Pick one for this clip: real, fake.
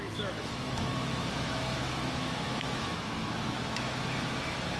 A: fake